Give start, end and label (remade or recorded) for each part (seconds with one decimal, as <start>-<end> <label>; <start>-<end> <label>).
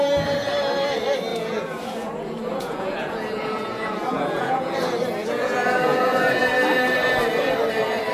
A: 0.0-1.3 recorded; 1.3-4.7 remade; 4.7-5.2 recorded; 5.2-6.4 remade; 6.4-8.1 recorded